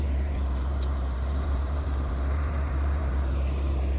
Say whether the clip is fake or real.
fake